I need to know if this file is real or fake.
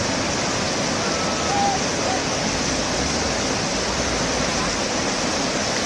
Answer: real